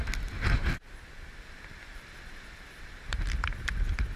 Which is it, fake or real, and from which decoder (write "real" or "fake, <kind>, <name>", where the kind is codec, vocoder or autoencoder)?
real